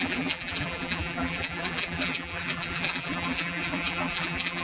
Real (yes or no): no